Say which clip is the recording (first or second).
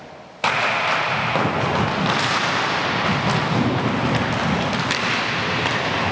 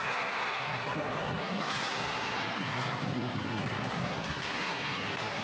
first